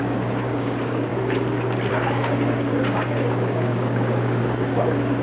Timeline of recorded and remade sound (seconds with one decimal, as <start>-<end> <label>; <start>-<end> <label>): 0.0-1.1 remade; 1.1-1.9 recorded; 1.9-5.2 remade